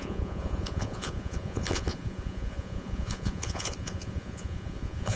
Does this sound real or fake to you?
fake